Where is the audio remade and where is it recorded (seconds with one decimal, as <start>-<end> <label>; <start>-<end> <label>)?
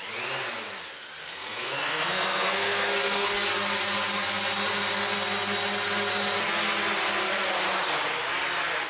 0.0-1.2 recorded; 1.2-3.3 remade; 3.3-8.9 recorded